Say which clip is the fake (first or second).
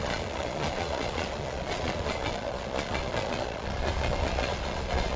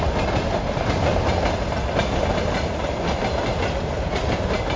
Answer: first